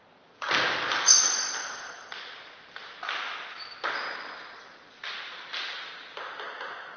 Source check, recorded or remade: recorded